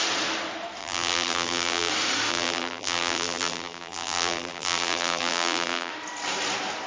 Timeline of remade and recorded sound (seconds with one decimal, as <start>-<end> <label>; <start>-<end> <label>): 0.0-0.8 recorded; 0.8-1.9 remade; 1.9-2.3 recorded; 2.3-5.9 remade; 5.9-6.9 recorded